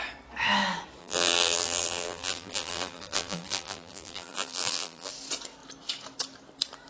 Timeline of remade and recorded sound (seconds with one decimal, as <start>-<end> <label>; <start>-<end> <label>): 0.0-1.0 recorded; 1.0-5.1 remade; 5.1-6.9 recorded